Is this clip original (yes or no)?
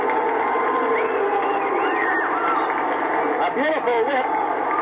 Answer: yes